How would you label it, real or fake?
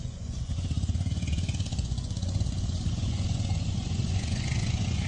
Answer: fake